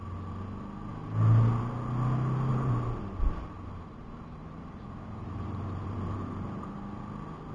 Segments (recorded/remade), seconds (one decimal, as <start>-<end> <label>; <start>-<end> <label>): 0.0-2.5 recorded; 2.5-7.0 remade; 7.0-7.5 recorded